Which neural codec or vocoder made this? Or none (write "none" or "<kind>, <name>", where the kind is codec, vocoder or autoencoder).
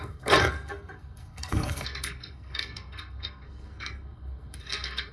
codec, SNAC